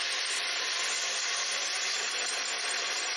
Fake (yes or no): yes